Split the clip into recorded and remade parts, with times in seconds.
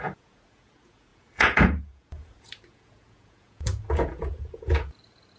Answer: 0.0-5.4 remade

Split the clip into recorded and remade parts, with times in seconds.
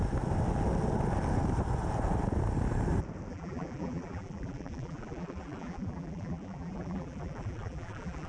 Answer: 0.0-3.3 recorded; 3.3-8.3 remade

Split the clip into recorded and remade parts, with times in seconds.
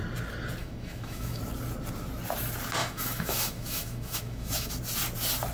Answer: 0.0-0.6 recorded; 0.6-1.4 remade; 1.4-2.8 recorded; 2.8-4.7 remade; 4.7-5.5 recorded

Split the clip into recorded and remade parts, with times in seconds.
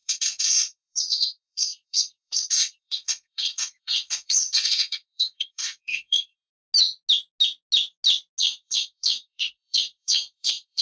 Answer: 0.0-6.5 remade; 6.5-8.4 recorded; 8.4-10.8 remade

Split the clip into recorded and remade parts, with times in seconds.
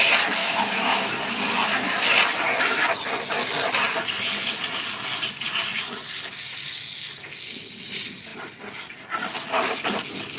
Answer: 0.0-0.4 recorded; 0.4-1.2 remade; 1.2-10.4 recorded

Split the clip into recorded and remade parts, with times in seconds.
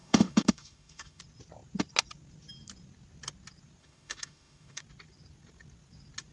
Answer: 0.0-1.2 remade; 1.2-3.8 recorded; 3.8-4.8 remade; 4.8-6.3 recorded